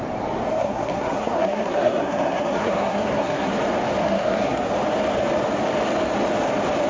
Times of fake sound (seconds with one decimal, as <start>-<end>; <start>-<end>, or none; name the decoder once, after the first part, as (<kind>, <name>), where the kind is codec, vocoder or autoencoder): 0.6-3.5 (codec, SNAC); 4.0-4.7